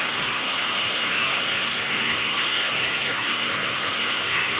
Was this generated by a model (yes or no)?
yes